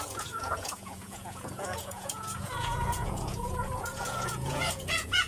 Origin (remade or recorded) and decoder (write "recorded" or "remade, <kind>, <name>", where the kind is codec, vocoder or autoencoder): remade, vocoder, Vocos